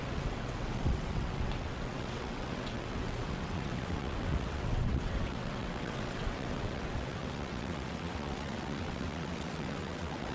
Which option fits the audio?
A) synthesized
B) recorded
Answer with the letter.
A